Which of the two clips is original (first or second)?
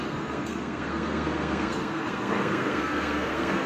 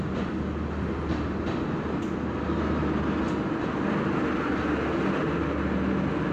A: second